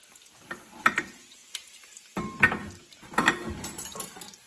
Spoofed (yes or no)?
no